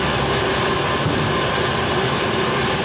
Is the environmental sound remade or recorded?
recorded